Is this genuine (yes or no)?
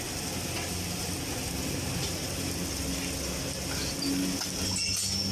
yes